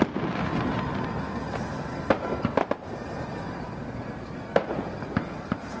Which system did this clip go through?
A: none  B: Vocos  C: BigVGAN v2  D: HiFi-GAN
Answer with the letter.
A